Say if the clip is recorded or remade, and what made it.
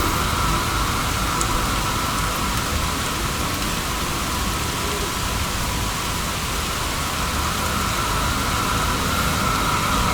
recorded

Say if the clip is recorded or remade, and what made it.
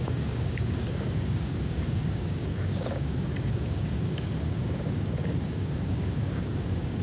remade, codec, DAC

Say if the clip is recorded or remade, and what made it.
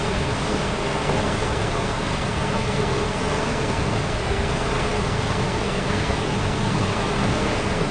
remade, codec, SNAC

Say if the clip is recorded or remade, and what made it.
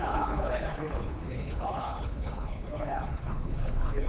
remade, codec, HILCodec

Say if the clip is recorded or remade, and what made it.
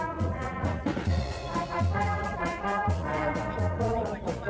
remade, vocoder, Vocos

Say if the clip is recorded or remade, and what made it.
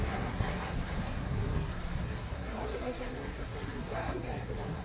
remade, codec, SNAC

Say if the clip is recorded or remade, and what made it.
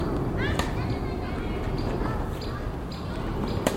recorded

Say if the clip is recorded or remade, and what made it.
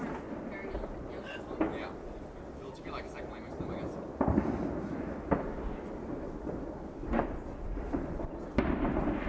recorded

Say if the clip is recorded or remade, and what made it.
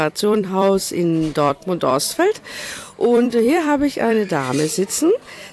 remade, vocoder, BigVGAN v2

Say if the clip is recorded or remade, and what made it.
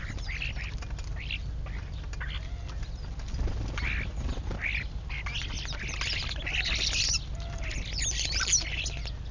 recorded